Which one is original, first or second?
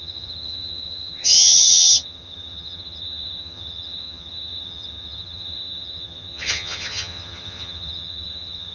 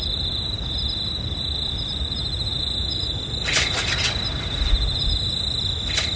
second